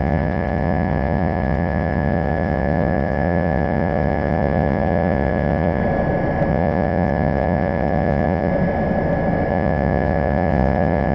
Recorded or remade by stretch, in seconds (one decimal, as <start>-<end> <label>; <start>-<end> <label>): 0.0-5.8 remade; 5.8-6.5 recorded; 6.5-8.5 remade; 8.5-9.5 recorded; 9.5-11.1 remade

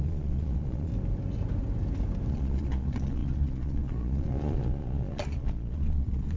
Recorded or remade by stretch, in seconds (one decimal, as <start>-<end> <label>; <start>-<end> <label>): 0.0-0.9 remade; 0.9-2.3 recorded; 2.3-6.4 remade

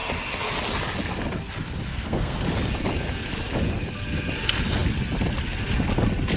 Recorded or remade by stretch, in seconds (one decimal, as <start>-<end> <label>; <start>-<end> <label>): 0.0-1.9 recorded; 1.9-2.4 remade; 2.4-6.4 recorded

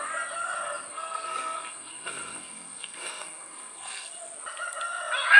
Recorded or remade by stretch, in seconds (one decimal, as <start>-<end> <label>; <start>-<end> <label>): 0.0-0.9 recorded; 0.9-4.1 remade; 4.1-5.4 recorded

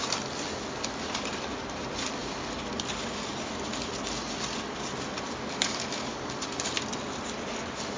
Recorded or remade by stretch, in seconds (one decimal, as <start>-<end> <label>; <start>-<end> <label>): 0.0-8.0 recorded